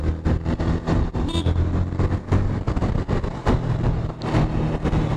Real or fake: real